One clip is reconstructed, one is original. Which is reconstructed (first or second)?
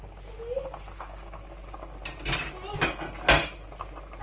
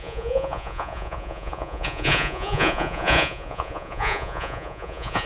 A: second